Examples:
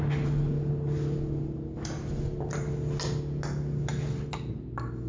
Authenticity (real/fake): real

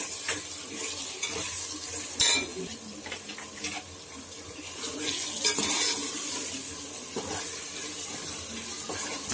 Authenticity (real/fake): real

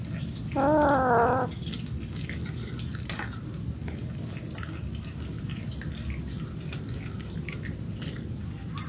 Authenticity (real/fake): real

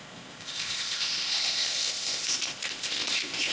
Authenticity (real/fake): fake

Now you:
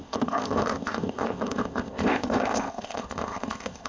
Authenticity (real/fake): fake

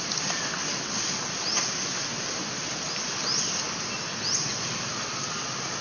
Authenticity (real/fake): real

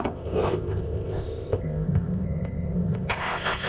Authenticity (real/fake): fake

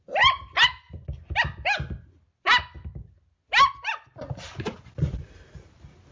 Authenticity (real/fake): real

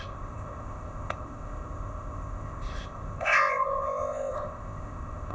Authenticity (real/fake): fake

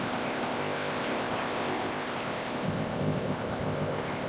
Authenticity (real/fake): fake